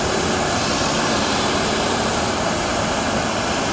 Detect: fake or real fake